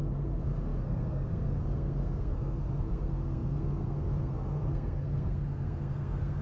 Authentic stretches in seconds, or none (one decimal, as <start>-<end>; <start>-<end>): none